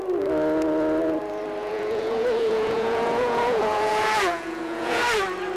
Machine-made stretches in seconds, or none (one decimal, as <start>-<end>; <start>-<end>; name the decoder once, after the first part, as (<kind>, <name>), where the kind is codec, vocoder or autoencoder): 1.6-5.0 (vocoder, Vocos)